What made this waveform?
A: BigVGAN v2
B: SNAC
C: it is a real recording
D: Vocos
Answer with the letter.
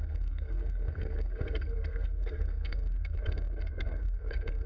B